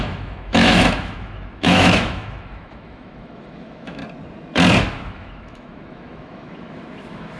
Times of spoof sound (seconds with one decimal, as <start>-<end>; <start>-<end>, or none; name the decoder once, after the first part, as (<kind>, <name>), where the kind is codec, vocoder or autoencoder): 0.0-4.0 (autoencoder, DAC-VAE); 4.8-7.4